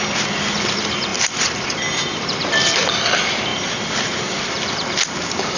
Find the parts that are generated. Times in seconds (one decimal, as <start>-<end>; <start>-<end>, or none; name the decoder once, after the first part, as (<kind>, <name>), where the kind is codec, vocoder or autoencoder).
1.1-2.9 (vocoder, BigVGAN v2); 3.5-4.4